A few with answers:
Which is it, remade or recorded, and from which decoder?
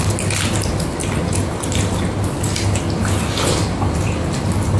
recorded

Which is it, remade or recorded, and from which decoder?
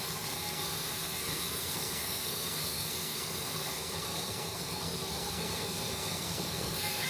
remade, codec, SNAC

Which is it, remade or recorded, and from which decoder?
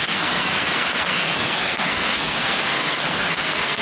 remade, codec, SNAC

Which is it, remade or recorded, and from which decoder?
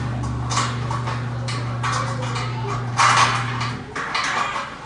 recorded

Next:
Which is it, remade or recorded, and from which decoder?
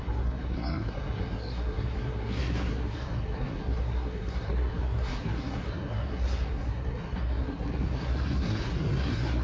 remade, codec, SNAC